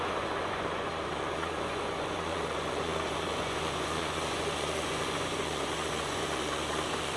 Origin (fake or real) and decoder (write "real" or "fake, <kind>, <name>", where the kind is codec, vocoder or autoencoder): fake, vocoder, Vocos